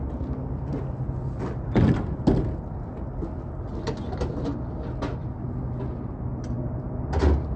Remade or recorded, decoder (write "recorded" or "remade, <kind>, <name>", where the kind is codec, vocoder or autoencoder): recorded